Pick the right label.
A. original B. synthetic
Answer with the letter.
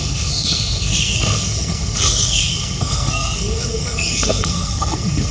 B